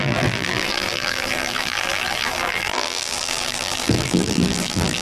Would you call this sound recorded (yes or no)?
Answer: no